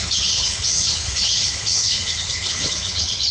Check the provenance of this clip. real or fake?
fake